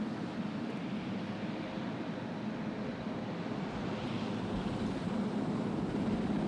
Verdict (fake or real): real